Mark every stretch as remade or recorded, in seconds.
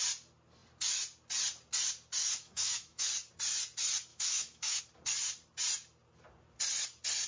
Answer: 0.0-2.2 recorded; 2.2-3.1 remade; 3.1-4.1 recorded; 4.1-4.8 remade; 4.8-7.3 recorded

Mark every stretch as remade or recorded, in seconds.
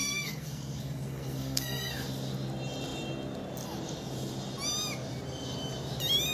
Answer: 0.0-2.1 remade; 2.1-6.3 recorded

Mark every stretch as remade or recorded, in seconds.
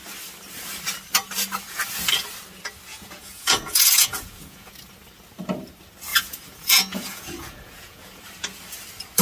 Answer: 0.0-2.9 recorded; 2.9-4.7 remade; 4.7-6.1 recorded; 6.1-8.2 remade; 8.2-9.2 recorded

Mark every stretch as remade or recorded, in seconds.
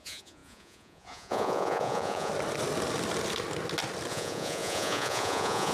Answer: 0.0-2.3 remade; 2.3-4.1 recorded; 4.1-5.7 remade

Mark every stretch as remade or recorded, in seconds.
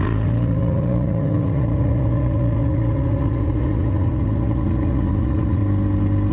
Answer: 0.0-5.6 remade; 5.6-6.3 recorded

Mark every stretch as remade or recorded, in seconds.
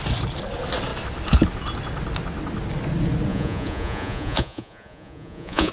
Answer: 0.0-3.3 recorded; 3.3-5.7 remade